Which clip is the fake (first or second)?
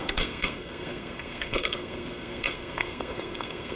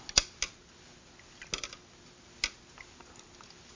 first